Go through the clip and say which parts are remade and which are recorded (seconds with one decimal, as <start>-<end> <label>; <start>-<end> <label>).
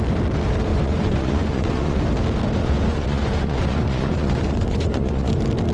0.0-0.7 recorded; 0.7-2.0 remade; 2.0-2.6 recorded; 2.6-5.3 remade; 5.3-5.7 recorded